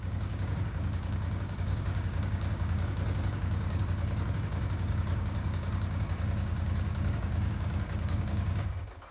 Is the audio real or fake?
fake